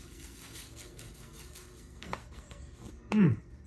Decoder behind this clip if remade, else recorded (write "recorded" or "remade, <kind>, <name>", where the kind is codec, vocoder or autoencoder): remade, codec, SNAC